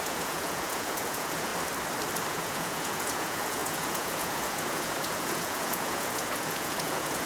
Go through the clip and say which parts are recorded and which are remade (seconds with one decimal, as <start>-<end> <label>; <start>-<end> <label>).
0.0-1.5 remade; 1.5-2.3 recorded; 2.3-7.3 remade